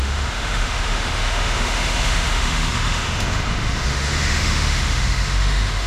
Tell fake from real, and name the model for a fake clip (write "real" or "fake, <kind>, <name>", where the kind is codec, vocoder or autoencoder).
fake, autoencoder, DAC-VAE